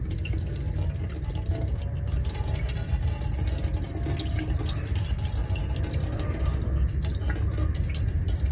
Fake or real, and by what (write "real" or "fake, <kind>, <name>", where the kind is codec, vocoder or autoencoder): real